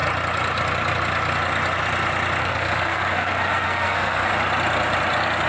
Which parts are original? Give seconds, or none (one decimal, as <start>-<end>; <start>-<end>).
0.0-2.4; 4.3-5.5